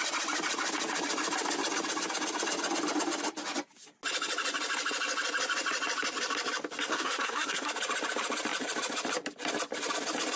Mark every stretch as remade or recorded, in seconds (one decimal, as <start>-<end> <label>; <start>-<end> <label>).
0.0-6.9 recorded; 6.9-7.7 remade; 7.7-10.4 recorded